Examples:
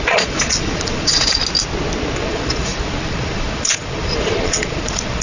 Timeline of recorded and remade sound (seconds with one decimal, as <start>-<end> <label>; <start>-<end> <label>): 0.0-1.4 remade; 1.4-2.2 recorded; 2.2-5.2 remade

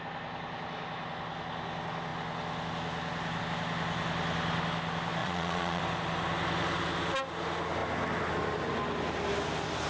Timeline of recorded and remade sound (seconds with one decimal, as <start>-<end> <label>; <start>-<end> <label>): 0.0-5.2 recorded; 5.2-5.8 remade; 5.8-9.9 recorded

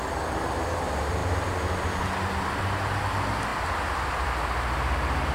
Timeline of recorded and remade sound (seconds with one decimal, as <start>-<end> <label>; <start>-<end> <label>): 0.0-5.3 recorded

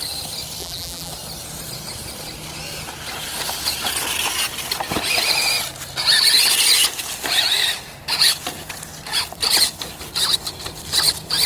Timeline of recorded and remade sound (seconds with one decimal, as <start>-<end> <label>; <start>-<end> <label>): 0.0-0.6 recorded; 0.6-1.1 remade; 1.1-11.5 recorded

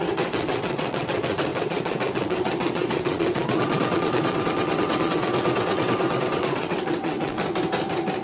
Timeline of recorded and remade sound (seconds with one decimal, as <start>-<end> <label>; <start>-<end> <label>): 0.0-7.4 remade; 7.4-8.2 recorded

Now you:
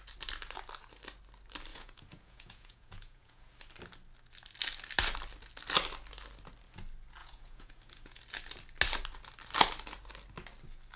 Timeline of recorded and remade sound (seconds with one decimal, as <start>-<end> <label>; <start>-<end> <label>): 0.0-1.7 recorded; 1.7-3.5 remade; 3.5-7.2 recorded; 7.2-8.2 remade; 8.2-11.0 recorded